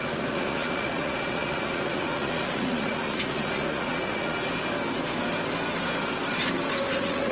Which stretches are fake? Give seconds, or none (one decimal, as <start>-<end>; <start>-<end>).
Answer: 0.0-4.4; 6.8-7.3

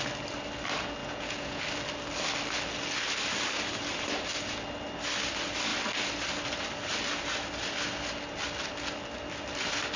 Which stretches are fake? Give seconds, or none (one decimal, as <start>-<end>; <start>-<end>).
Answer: 1.0-1.6

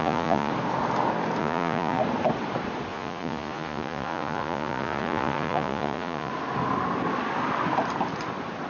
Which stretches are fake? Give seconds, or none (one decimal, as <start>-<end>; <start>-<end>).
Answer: 0.0-0.5; 1.4-2.0; 2.9-6.3

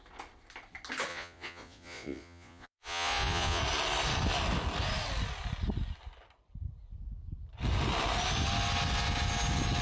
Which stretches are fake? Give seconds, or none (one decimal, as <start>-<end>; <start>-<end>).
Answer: 1.1-3.6

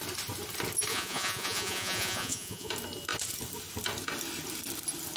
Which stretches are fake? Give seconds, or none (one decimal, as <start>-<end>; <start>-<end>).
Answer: 0.9-2.7

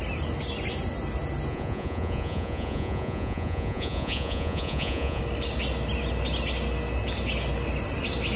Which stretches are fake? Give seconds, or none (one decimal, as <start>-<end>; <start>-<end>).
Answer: 1.5-5.2